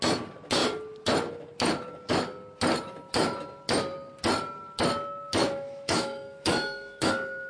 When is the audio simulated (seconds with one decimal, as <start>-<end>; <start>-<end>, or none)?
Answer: 5.4-7.1

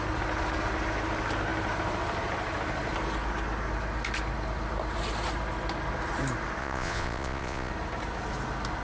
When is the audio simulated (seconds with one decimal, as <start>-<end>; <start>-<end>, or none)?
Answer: 6.6-7.7

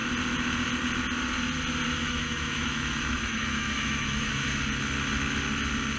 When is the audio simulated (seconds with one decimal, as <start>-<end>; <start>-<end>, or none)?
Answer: 2.0-4.6